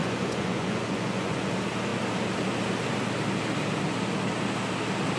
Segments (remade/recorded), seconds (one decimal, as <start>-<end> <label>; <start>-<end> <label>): 0.0-1.5 remade; 1.5-5.2 recorded